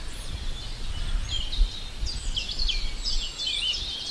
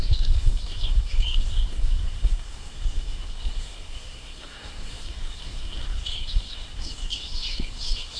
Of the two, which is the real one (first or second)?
first